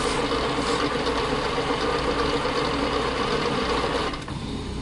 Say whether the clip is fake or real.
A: fake